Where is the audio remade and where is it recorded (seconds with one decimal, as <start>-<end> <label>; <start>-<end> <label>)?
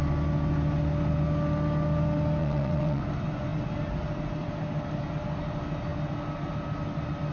0.0-2.4 recorded; 2.4-3.0 remade; 3.0-7.3 recorded